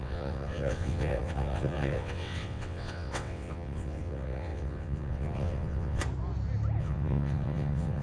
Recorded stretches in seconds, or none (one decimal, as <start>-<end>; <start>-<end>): 6.0-6.8